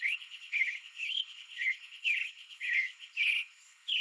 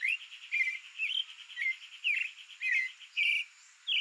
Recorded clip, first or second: second